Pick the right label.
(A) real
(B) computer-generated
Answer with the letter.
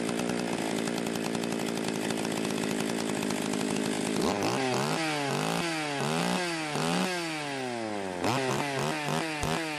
A